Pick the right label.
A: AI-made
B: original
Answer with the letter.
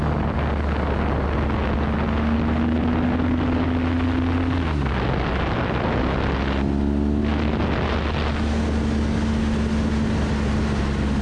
B